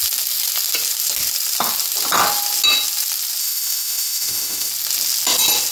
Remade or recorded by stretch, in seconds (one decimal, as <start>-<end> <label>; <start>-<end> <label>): 0.0-3.4 recorded; 3.4-4.7 remade; 4.7-5.7 recorded